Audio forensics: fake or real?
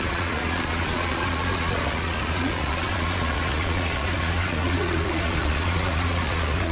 fake